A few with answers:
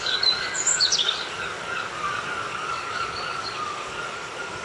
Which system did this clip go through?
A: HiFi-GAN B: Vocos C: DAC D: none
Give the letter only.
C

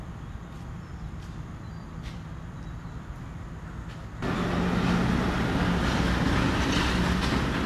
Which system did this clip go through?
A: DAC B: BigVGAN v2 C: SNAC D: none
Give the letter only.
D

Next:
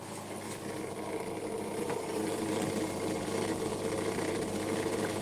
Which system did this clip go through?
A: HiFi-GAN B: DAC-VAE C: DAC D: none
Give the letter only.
D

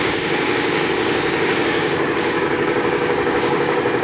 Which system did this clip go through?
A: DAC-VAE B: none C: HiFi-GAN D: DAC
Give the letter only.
D